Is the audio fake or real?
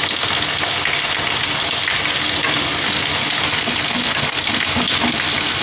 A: real